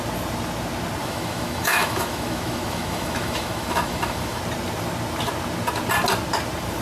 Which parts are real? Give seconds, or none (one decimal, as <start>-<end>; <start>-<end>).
0.0-1.0; 4.4-6.8